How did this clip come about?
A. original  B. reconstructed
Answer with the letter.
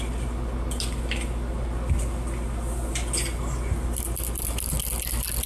A